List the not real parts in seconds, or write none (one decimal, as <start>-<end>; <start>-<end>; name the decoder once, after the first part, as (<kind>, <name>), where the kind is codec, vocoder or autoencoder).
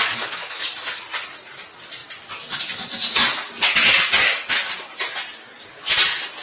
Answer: none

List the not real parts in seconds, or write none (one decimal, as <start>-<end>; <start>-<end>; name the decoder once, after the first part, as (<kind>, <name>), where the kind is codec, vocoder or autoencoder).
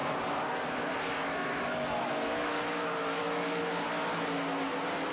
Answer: 1.4-3.7 (autoencoder, DAC-VAE)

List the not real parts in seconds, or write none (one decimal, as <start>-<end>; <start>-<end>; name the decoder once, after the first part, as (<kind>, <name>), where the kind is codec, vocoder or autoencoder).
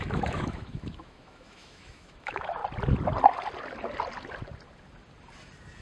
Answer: 0.0-2.6 (autoencoder, DAC-VAE)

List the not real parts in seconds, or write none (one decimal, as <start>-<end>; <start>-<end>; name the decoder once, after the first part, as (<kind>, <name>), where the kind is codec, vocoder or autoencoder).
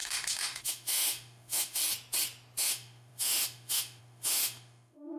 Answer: 0.0-1.8 (autoencoder, DAC-VAE); 2.6-5.2